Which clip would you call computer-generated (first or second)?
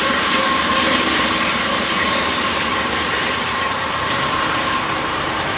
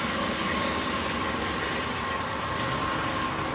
first